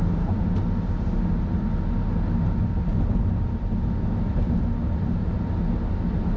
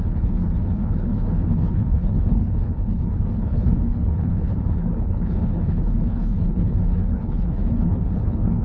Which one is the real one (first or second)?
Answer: first